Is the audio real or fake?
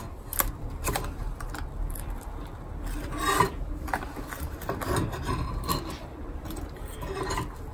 real